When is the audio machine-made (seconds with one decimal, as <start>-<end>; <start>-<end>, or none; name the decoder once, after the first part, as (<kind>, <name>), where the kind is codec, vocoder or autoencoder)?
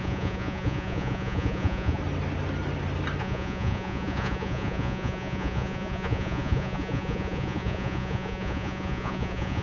0.0-2.0 (vocoder, Vocos); 3.2-9.6